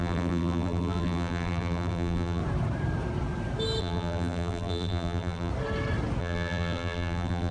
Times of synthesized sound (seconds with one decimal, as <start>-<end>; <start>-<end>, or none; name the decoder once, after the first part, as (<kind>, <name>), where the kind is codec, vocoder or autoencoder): 0.0-2.4 (vocoder, BigVGAN v2); 3.8-5.5; 6.2-7.5

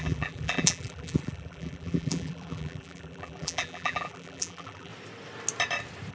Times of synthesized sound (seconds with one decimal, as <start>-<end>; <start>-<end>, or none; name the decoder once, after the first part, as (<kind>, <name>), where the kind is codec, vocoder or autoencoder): 0.0-4.9 (vocoder, BigVGAN v2)